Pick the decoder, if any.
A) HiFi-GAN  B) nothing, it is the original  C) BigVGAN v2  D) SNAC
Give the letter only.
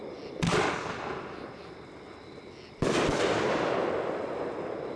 B